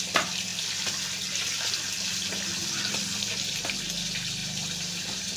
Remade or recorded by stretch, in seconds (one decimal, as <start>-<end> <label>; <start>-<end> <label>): 0.0-4.4 recorded; 4.4-5.4 remade